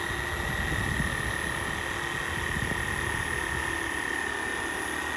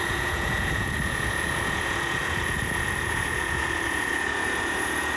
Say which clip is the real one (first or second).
first